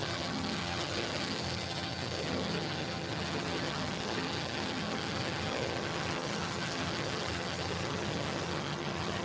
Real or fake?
fake